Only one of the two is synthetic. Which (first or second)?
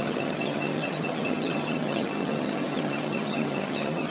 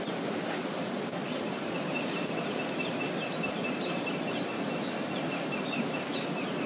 first